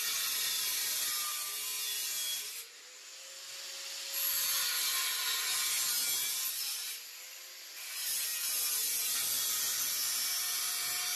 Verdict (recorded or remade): recorded